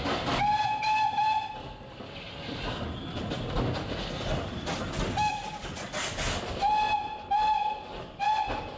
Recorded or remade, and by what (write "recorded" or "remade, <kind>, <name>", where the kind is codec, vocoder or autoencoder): recorded